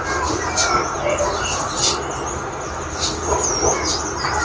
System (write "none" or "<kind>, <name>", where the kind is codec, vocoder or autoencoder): none